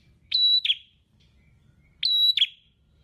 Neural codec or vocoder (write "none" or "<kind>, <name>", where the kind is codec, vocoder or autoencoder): none